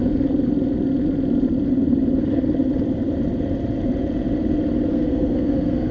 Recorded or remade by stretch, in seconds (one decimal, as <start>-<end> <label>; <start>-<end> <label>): 0.0-4.9 recorded; 4.9-5.9 remade